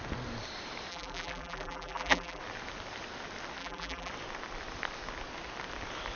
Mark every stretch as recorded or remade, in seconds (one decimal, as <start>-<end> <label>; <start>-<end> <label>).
0.0-0.9 recorded; 0.9-2.4 remade; 2.4-3.6 recorded; 3.6-4.1 remade; 4.1-6.2 recorded

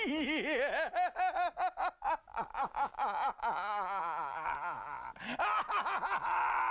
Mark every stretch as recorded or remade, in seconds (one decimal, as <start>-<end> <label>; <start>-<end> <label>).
0.0-2.3 recorded; 2.3-4.0 remade; 4.0-6.7 recorded

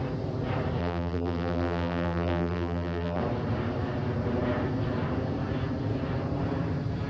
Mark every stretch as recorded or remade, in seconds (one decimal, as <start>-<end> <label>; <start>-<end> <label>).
0.0-0.8 recorded; 0.8-3.2 remade; 3.2-7.1 recorded